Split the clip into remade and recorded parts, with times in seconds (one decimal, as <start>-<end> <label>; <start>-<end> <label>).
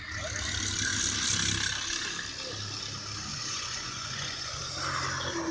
0.0-3.3 recorded; 3.3-4.7 remade; 4.7-5.5 recorded